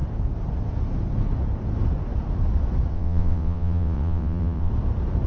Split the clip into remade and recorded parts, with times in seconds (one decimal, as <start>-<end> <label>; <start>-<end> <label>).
0.0-2.9 recorded; 2.9-4.7 remade; 4.7-5.3 recorded